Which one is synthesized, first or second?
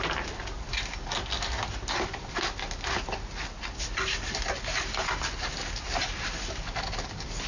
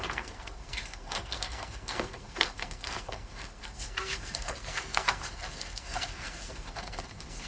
second